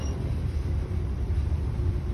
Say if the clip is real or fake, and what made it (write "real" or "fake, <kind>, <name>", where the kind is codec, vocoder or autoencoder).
fake, vocoder, BigVGAN v2